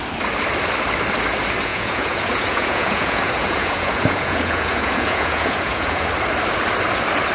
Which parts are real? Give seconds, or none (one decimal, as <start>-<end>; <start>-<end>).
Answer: 0.0-1.7; 6.1-7.3

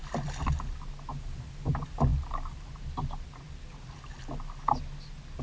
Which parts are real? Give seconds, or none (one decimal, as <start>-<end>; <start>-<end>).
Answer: 0.0-5.4

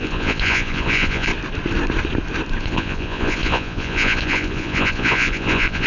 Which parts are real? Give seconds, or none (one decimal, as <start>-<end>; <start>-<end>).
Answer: 1.3-2.6

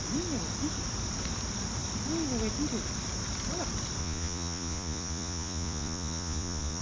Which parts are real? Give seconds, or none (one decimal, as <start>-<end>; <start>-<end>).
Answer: 0.0-4.0

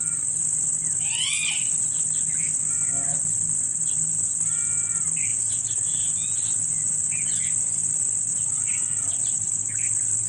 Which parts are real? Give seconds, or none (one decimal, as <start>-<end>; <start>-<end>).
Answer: 0.0-5.3; 7.4-8.3; 9.2-10.3

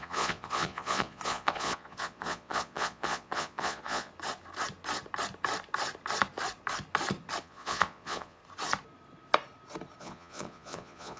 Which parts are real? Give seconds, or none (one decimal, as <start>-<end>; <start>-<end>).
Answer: 4.1-7.4; 8.4-10.0

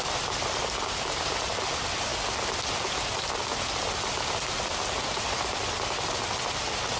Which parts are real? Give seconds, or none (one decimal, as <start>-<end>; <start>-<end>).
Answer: 0.0-7.0

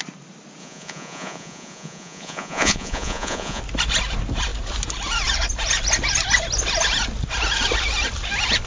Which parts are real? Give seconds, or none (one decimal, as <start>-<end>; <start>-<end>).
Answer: 0.0-0.6; 3.6-8.7